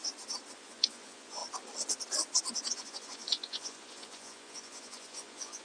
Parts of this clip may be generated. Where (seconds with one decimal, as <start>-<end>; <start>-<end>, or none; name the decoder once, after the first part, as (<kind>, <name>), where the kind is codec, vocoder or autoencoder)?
0.6-1.4 (vocoder, Vocos); 2.7-5.6